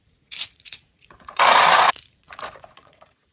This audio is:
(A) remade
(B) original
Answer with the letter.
A